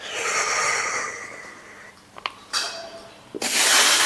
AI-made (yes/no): yes